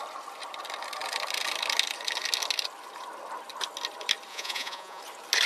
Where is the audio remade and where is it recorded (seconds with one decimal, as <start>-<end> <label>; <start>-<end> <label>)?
0.0-4.3 recorded; 4.3-5.0 remade; 5.0-5.5 recorded